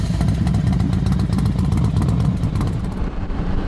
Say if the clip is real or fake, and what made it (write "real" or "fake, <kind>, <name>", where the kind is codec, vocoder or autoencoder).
fake, vocoder, BigVGAN v2